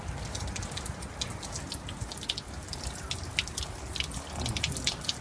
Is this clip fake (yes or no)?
no